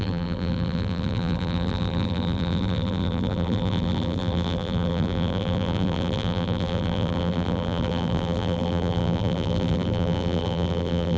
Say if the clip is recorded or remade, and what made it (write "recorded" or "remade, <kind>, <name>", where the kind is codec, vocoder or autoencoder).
remade, vocoder, BigVGAN v2